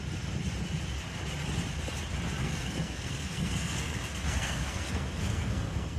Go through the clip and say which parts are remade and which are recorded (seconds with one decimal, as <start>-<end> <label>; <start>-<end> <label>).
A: 0.0-2.4 recorded; 2.4-6.0 remade